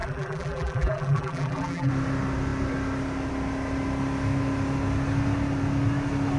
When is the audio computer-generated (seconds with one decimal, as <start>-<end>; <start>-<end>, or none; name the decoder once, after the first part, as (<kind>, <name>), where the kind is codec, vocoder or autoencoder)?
0.0-1.9 (vocoder, BigVGAN v2)